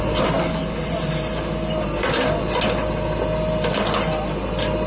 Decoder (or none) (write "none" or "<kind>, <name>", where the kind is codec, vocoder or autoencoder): none